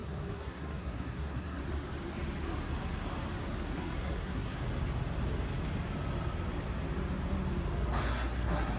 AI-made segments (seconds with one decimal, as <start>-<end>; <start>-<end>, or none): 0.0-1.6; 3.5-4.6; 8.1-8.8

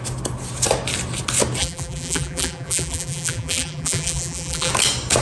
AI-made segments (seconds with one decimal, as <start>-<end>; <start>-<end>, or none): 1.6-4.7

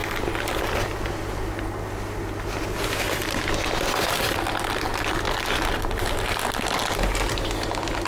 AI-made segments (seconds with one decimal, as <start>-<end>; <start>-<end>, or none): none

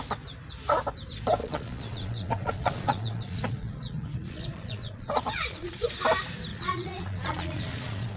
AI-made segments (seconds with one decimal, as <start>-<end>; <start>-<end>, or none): 1.4-5.9; 6.5-8.2